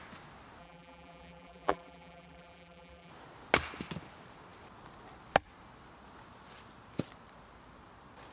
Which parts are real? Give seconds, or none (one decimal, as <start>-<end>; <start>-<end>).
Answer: 0.0-0.6; 3.1-8.3